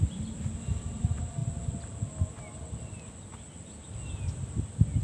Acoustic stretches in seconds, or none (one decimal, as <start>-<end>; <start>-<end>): 0.0-5.0